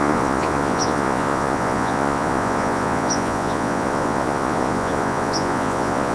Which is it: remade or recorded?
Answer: remade